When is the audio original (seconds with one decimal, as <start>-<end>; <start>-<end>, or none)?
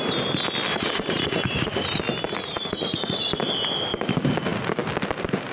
0.0-0.7; 2.0-2.4; 3.2-5.5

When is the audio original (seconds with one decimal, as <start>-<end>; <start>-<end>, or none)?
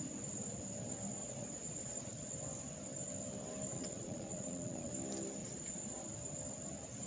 0.0-1.2; 2.3-3.7; 4.9-5.4; 6.1-7.1